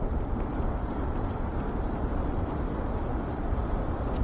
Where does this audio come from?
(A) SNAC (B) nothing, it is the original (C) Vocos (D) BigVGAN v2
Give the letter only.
D